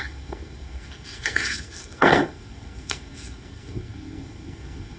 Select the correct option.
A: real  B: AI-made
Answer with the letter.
B